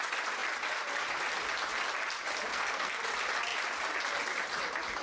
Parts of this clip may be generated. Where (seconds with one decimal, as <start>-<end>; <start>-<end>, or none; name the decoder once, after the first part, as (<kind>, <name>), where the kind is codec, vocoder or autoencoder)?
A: 2.5-3.0 (codec, SNAC)

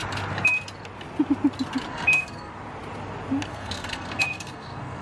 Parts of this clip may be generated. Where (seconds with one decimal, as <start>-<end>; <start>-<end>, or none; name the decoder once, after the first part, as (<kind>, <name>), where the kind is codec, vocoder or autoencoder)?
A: 1.9-2.5 (codec, SNAC); 3.5-5.0

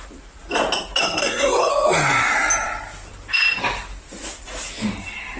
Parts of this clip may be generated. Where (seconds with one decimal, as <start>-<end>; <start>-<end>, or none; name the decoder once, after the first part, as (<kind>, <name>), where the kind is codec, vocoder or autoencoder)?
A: 1.0-1.7 (codec, SNAC)

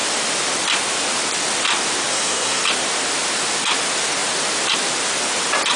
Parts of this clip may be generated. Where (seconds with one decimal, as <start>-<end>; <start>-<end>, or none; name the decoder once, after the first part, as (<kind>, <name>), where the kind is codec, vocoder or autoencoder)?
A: 2.1-2.6 (codec, SNAC)

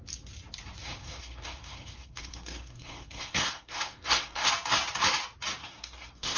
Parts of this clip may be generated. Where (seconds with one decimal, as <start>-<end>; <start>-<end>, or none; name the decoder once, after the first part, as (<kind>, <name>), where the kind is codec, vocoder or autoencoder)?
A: 0.8-4.5 (codec, SNAC); 5.6-6.4

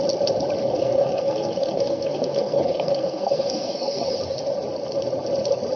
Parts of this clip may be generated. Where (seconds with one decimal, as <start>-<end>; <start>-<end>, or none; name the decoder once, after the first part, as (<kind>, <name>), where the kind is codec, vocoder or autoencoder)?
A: 0.6-4.1 (codec, SNAC)